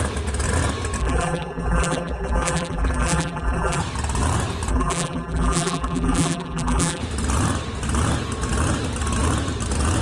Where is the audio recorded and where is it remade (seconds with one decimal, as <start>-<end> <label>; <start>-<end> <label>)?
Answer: 0.0-1.0 recorded; 1.0-3.8 remade; 3.8-4.7 recorded; 4.7-7.0 remade; 7.0-10.0 recorded